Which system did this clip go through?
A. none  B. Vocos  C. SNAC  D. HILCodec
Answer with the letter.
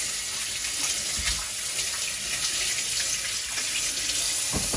A